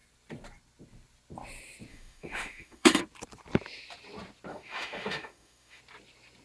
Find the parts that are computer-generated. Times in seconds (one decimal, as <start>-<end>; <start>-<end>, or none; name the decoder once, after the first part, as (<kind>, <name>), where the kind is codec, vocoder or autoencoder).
1.9-3.0 (autoencoder, DAC-VAE); 4.5-5.8